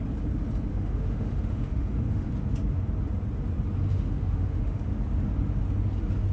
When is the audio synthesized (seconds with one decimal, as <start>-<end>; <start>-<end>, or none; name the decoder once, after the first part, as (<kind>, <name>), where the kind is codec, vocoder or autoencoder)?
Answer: 0.7-2.3 (autoencoder, DAC-VAE); 3.9-4.8